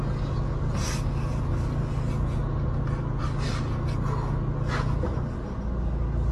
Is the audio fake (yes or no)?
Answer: no